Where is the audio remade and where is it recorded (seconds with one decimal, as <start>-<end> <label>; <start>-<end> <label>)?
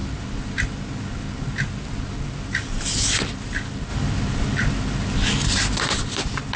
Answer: 0.0-6.6 recorded